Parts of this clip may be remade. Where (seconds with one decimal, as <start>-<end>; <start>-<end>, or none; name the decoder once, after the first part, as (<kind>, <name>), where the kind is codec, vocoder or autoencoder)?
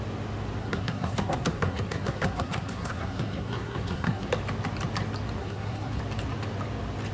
0.6-4.3 (codec, SNAC); 5.4-6.0